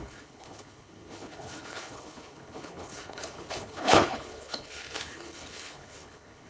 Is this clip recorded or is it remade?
remade